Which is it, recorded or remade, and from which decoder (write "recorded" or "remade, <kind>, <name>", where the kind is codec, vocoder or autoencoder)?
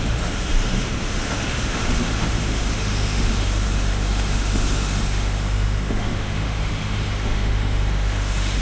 remade, autoencoder, DAC-VAE